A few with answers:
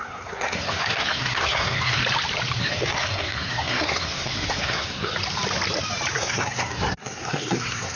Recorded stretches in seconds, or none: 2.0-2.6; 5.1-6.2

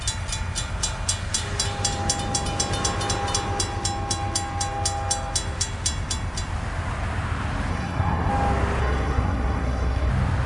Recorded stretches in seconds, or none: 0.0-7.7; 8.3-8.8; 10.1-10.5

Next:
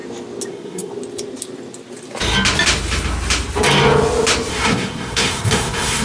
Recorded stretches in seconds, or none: 0.0-0.5; 0.9-4.5

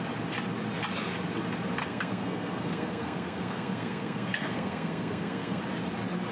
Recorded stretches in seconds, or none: 0.0-1.8; 5.6-6.3

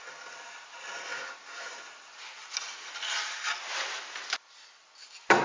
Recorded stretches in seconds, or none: 0.0-5.4